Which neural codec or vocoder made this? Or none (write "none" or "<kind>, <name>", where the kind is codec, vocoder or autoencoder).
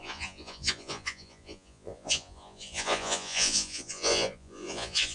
vocoder, Vocos